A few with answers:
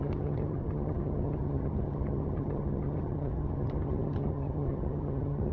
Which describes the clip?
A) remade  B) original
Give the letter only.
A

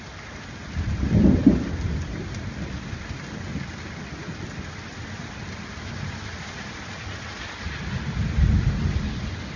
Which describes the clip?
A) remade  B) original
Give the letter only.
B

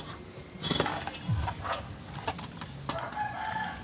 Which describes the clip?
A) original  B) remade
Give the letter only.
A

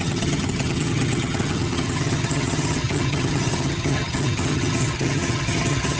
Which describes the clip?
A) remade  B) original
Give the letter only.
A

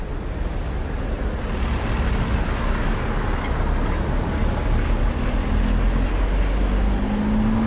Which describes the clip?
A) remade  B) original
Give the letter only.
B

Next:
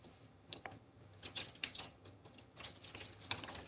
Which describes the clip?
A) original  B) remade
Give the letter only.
B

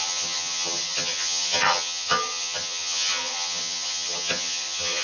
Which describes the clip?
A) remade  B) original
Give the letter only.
A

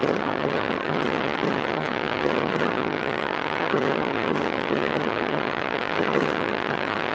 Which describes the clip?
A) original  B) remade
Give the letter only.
B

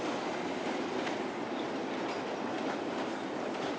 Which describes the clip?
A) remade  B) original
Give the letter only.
B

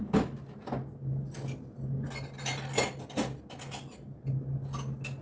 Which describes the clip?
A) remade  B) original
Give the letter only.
B